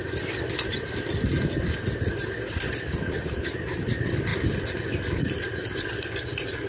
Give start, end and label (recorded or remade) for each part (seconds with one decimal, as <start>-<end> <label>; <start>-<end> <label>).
0.0-0.7 remade; 0.7-2.0 recorded; 2.0-4.3 remade; 4.3-5.2 recorded; 5.2-6.7 remade